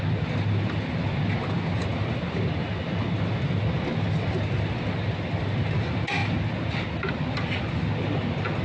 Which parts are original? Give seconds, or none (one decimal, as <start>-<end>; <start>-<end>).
0.0-8.6